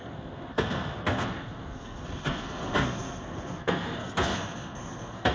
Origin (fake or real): fake